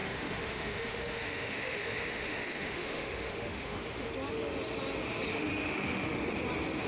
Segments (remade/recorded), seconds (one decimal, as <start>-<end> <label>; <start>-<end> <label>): 0.0-4.1 remade; 4.1-5.3 recorded; 5.3-6.2 remade; 6.2-6.9 recorded